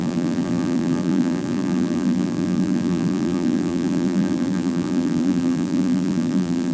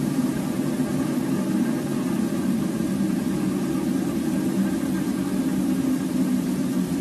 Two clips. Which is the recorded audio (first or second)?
second